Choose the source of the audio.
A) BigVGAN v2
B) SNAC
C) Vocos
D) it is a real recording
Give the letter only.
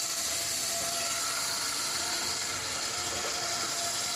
D